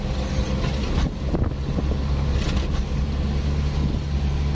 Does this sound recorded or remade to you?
recorded